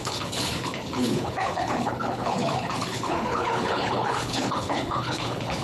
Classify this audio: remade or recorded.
remade